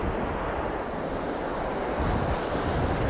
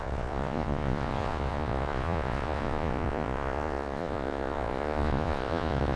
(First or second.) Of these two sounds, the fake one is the second